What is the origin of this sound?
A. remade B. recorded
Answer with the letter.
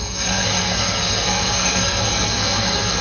A